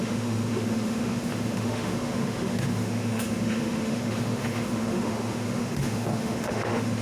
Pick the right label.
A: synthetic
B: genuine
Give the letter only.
A